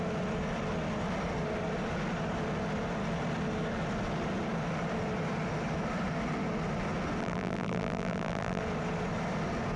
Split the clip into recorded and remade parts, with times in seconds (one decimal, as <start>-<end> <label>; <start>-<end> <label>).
0.0-7.2 recorded; 7.2-8.6 remade; 8.6-9.8 recorded